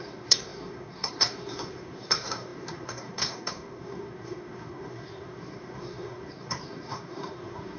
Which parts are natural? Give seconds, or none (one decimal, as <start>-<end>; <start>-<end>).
none